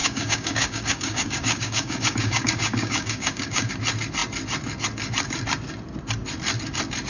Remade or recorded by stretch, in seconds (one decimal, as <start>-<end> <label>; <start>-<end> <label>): 0.0-3.7 remade; 3.7-7.1 recorded